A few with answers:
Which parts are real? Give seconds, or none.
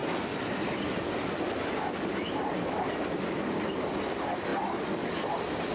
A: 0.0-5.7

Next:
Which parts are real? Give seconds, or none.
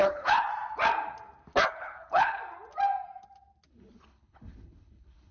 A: 0.5-1.7; 2.4-3.7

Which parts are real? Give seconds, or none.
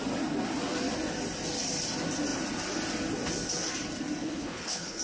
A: 0.0-4.2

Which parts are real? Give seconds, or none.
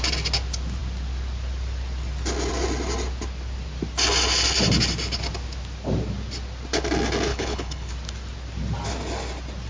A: 0.0-7.3; 7.9-9.7